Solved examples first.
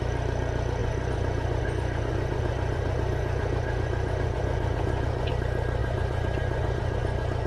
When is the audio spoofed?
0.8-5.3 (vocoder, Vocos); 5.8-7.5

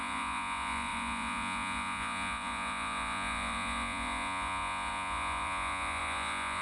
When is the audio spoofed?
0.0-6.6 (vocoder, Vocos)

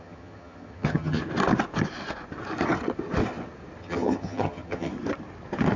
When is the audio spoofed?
0.0-1.2 (vocoder, HiFi-GAN); 3.8-4.9

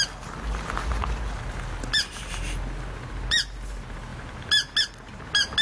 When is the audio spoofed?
none